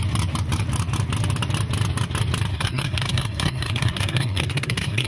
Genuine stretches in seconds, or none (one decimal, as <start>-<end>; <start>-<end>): 0.0-2.5

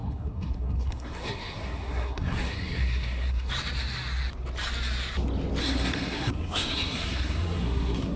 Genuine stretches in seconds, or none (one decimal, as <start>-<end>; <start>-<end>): 3.5-5.6

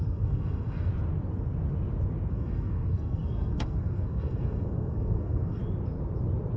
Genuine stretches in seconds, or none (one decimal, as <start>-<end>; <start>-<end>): 0.9-2.3; 5.6-6.6